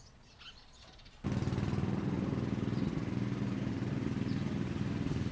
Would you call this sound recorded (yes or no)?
yes